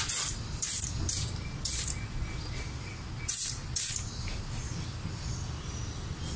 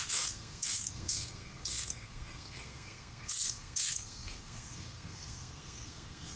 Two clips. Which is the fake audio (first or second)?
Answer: second